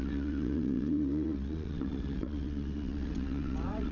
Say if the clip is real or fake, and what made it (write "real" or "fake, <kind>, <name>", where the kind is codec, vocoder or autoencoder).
fake, vocoder, WaveNeXt